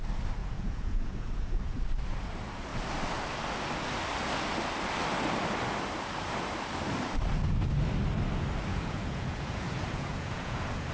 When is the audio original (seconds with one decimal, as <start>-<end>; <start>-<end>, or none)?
0.0-0.4; 1.8-8.7